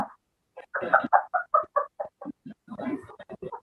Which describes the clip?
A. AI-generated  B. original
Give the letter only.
B